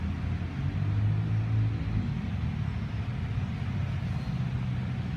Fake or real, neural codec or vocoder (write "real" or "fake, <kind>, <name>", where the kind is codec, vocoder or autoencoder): real